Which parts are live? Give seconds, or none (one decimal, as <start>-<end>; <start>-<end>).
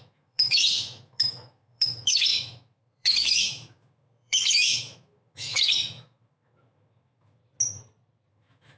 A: 7.4-8.3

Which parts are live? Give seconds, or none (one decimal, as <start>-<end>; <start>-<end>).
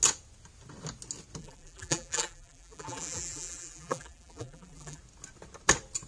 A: 0.0-1.4; 5.0-6.1